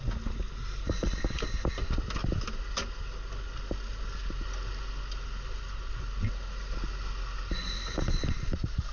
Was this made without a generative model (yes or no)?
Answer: yes